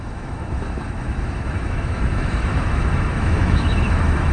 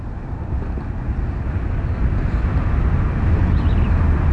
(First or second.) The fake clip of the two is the first